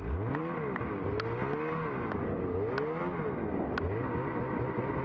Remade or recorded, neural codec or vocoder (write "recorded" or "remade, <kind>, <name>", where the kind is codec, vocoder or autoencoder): recorded